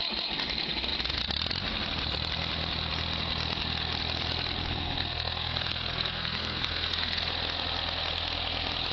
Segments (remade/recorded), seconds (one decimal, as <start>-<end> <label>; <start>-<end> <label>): 0.0-4.7 recorded; 4.7-7.3 remade; 7.3-8.9 recorded